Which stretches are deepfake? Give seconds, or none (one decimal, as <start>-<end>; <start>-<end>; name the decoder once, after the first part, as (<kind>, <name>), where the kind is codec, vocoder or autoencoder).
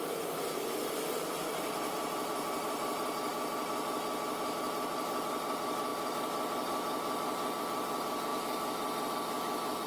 0.0-3.3 (vocoder, BigVGAN v2); 4.9-9.9